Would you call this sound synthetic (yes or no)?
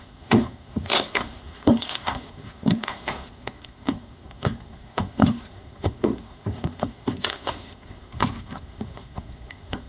yes